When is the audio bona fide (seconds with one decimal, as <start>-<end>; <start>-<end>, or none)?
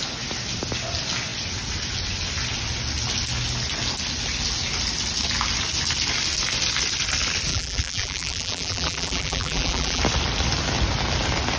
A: 0.0-7.5; 10.0-11.6